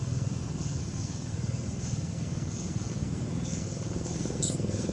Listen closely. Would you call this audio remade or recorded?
remade